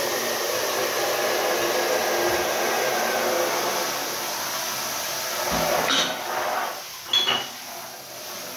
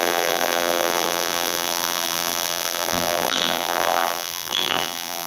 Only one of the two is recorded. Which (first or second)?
first